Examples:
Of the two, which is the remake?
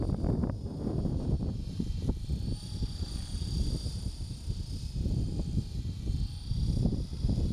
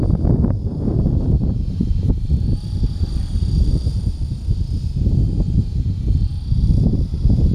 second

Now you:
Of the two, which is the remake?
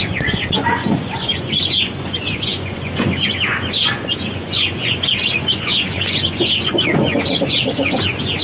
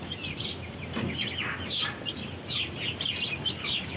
first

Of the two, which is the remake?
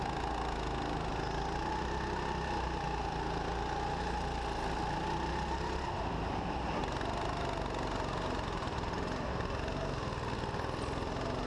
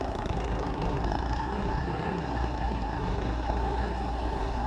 second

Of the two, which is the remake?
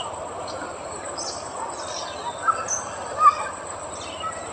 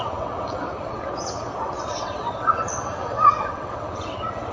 second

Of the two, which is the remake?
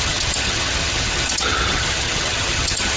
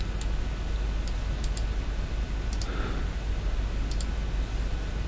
first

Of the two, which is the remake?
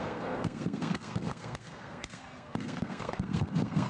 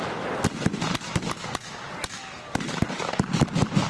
first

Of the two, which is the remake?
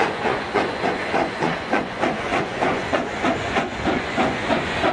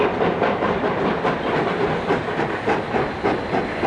first